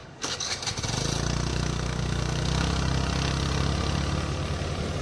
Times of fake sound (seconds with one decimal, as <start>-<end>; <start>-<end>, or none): 0.0-0.6; 1.5-2.8